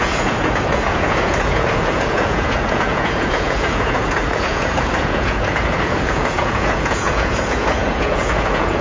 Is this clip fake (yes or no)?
yes